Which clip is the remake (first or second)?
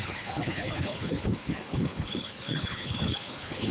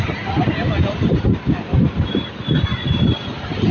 first